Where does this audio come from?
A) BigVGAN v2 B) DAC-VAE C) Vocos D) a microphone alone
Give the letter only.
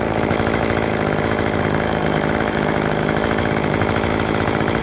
B